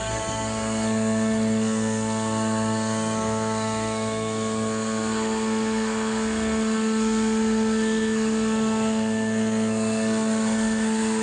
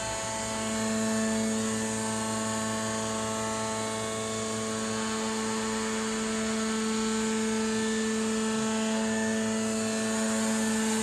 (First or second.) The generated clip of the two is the first